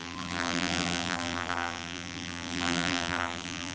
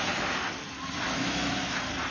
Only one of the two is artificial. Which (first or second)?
first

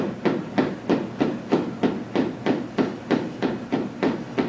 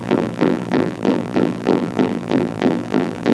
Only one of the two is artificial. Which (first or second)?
second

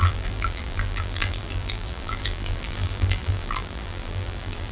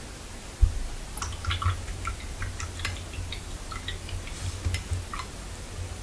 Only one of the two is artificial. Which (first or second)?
first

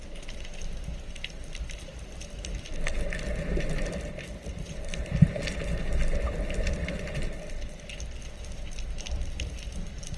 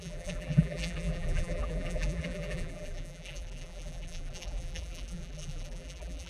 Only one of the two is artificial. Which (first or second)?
second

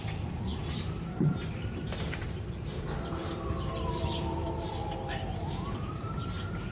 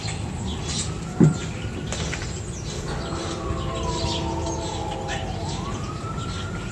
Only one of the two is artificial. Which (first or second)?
first